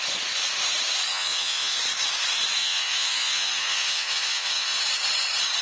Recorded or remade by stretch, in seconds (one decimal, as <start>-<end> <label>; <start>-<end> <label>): 0.0-1.1 recorded; 1.1-1.8 remade; 1.8-2.6 recorded; 2.6-4.8 remade; 4.8-5.6 recorded